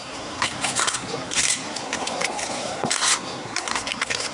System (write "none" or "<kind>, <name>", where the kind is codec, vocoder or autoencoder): codec, SNAC